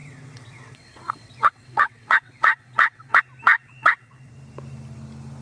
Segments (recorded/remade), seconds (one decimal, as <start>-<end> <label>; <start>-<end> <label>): 0.0-3.2 remade; 3.2-3.6 recorded; 3.6-4.3 remade; 4.3-5.4 recorded